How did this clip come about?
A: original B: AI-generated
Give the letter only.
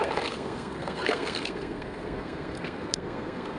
B